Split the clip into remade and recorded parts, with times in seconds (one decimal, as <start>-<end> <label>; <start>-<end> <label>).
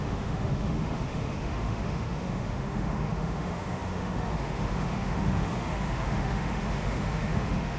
0.0-7.8 remade